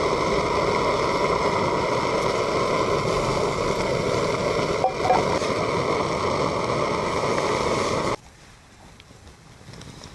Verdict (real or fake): real